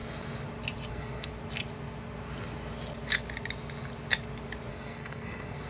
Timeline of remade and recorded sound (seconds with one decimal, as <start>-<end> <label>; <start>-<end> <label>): 0.0-0.9 recorded; 0.9-1.3 remade; 1.3-4.7 recorded; 4.7-5.7 remade